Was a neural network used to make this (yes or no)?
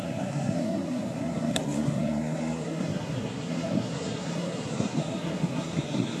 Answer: yes